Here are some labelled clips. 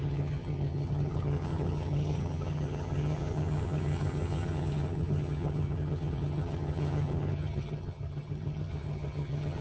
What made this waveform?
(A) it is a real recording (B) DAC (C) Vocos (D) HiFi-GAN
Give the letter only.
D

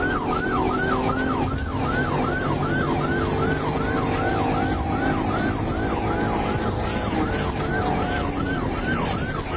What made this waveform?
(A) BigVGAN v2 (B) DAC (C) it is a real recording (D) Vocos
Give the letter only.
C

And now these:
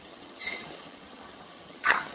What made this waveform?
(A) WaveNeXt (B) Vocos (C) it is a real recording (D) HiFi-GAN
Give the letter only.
D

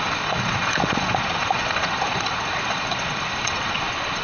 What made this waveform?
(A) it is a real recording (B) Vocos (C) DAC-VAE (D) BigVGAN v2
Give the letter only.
B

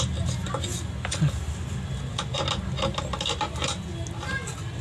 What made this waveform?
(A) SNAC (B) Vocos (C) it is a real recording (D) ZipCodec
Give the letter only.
C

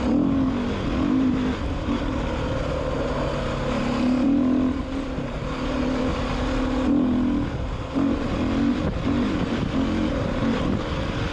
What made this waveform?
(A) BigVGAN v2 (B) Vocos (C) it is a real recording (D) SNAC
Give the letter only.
C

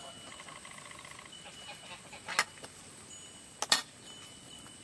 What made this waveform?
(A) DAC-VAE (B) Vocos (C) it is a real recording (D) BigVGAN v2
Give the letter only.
C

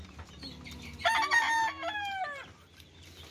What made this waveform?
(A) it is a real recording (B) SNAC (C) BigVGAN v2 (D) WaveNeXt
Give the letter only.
A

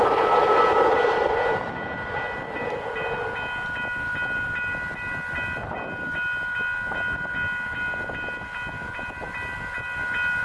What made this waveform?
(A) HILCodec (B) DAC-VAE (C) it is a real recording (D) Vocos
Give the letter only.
C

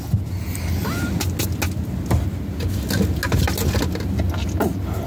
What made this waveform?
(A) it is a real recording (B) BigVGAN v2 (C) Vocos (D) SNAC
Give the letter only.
A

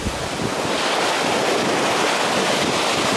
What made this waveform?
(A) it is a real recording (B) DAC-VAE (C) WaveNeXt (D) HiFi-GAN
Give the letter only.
A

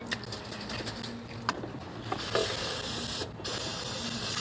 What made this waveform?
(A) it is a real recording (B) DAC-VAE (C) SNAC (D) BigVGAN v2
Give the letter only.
A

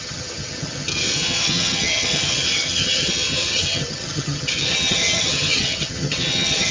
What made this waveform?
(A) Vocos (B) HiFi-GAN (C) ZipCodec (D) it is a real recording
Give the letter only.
B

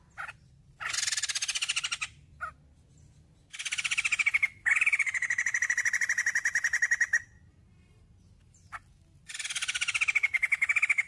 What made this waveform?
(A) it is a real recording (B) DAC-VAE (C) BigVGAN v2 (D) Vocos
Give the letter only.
A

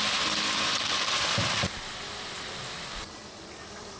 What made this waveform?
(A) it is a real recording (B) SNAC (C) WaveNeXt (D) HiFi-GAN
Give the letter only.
A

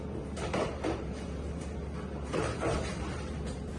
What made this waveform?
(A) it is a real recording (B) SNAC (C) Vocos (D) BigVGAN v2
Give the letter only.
D